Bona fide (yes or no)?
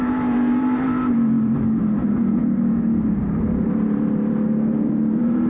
no